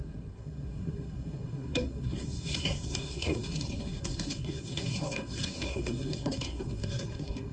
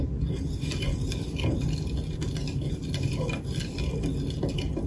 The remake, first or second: first